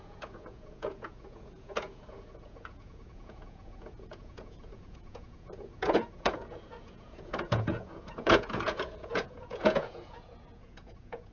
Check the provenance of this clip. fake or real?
fake